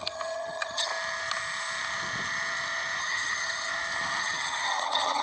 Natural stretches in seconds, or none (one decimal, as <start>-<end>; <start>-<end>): 0.9-3.0; 3.7-4.2